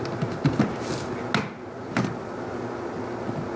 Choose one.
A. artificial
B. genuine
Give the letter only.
B